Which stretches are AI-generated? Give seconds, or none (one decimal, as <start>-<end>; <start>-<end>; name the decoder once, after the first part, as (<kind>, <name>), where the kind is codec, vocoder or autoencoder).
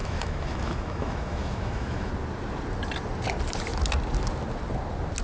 0.0-2.1 (autoencoder, DAC-VAE)